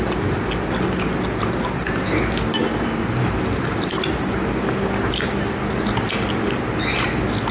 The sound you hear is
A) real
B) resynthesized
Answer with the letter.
A